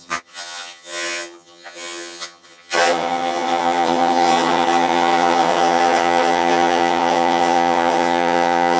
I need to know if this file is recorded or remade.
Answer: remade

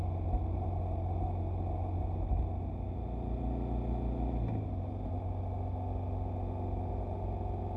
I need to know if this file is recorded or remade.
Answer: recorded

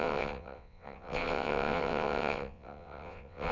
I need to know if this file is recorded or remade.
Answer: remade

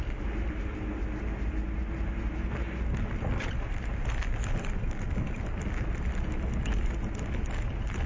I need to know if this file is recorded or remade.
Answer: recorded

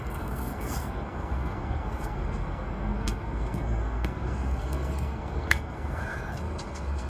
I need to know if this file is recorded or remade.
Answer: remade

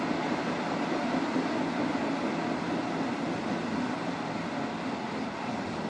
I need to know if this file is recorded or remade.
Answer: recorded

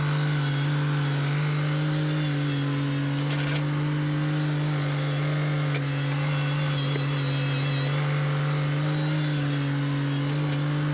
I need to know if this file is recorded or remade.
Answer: recorded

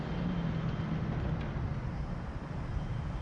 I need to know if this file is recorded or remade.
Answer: recorded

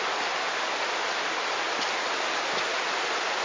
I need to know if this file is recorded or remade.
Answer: recorded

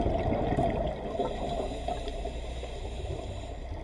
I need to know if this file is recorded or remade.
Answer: recorded